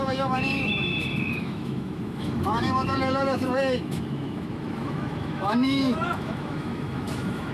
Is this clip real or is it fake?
fake